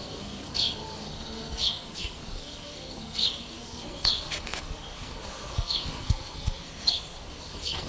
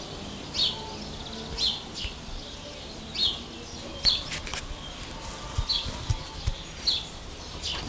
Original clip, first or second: second